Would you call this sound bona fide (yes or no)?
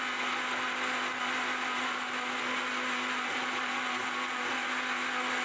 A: yes